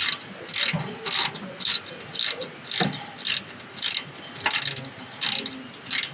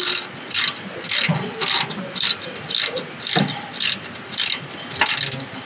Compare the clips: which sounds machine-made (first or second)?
second